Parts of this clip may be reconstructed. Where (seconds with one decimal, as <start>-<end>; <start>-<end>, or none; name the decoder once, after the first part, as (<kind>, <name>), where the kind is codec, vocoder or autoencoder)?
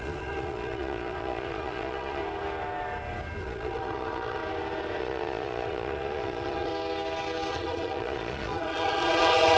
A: 0.0-2.2 (vocoder, Vocos); 3.4-4.4; 5.0-6.7; 7.5-9.6